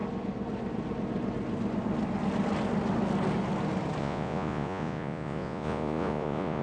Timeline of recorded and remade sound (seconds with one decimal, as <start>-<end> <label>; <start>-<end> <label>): 0.0-4.0 recorded; 4.0-6.6 remade